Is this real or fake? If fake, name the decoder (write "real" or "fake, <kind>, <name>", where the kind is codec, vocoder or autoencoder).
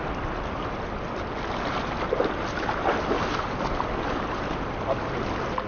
real